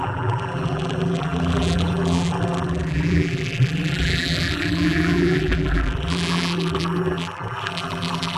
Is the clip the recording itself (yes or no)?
no